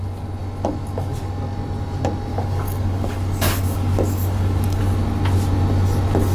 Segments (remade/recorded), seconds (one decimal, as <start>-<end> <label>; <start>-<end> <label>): 0.0-2.3 recorded; 2.3-4.8 remade; 4.8-6.3 recorded